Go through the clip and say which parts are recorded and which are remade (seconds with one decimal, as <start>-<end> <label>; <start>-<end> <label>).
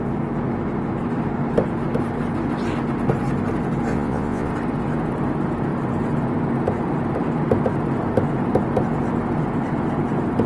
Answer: 0.0-3.9 recorded; 3.9-4.5 remade; 4.5-10.5 recorded